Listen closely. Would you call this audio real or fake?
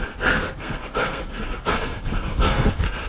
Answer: fake